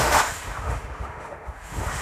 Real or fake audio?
fake